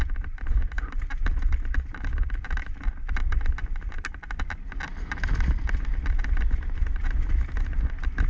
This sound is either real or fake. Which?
real